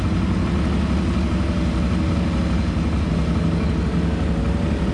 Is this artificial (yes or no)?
no